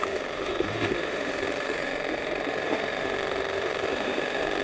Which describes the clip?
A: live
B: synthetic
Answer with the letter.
B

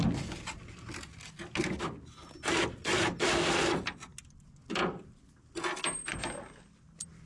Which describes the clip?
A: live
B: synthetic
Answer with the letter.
A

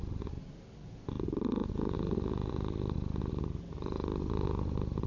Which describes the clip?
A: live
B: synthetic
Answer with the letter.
A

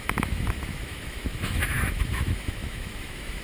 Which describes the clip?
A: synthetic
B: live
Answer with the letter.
A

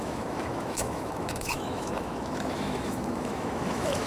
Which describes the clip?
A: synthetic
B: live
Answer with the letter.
A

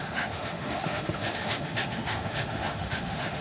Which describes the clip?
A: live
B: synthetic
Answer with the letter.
B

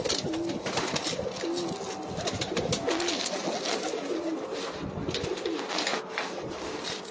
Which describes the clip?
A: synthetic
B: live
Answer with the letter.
B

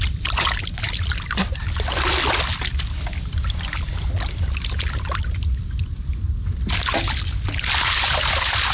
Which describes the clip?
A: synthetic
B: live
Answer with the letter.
B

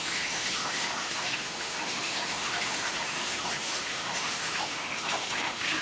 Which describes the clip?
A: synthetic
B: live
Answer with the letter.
A